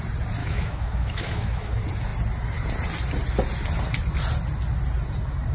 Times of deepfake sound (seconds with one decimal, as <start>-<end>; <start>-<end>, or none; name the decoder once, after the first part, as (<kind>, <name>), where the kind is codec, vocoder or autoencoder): 0.4-1.7 (autoencoder, DAC-VAE)